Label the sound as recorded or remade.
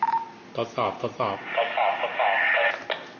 recorded